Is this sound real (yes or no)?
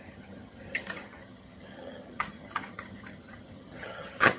no